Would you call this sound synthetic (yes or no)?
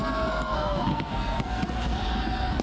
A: yes